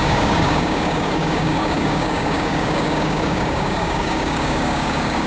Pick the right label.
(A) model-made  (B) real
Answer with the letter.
A